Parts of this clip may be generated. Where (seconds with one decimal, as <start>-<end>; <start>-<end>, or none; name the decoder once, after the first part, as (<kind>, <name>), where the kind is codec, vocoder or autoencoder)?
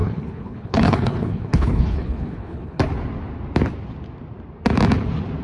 0.0-2.8 (codec, HILCodec)